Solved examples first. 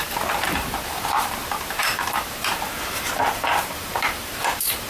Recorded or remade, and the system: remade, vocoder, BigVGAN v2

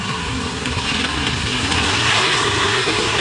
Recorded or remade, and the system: remade, codec, SNAC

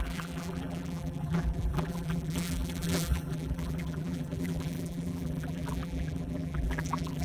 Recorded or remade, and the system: remade, vocoder, BigVGAN v2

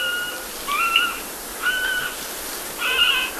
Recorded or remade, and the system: recorded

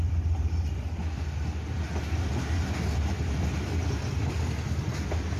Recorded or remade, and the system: recorded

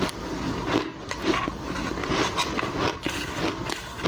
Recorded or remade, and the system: recorded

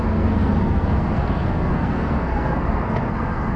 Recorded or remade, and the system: remade, codec, SNAC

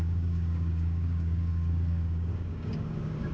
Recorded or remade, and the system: remade, codec, DAC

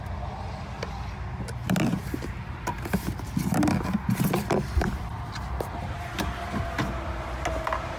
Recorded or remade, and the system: recorded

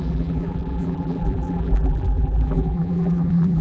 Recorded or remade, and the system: remade, vocoder, BigVGAN v2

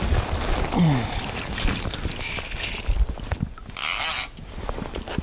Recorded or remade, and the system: recorded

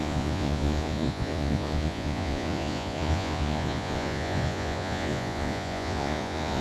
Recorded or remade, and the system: remade, vocoder, Vocos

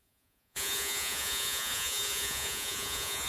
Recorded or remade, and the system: remade, vocoder, Vocos